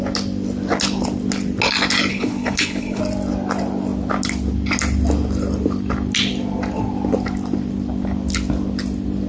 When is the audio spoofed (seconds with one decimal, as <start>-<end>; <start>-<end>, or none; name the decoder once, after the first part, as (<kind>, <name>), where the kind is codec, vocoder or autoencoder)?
2.1-3.0 (codec, HILCodec)